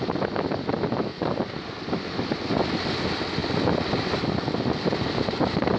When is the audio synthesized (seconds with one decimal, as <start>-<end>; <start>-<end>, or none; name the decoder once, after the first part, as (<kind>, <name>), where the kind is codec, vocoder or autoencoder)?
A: none